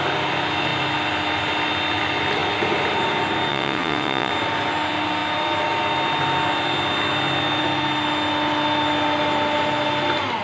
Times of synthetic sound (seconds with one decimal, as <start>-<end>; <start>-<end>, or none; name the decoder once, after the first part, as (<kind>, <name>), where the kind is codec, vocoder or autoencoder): 3.5-4.3 (vocoder, WaveNeXt)